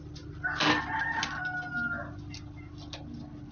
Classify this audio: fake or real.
real